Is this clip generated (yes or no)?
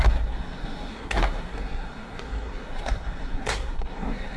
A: yes